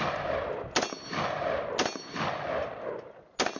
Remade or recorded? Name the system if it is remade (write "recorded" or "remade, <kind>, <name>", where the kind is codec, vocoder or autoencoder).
recorded